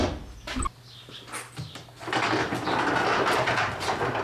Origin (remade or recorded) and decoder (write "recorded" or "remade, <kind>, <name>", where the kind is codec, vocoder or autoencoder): recorded